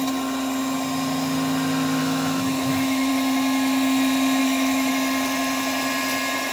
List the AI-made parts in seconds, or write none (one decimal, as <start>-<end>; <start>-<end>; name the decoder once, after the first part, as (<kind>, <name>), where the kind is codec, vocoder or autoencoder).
2.0-3.1 (autoencoder, DAC-VAE); 4.4-4.9